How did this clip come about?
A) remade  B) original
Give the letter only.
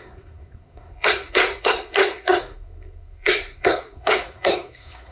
A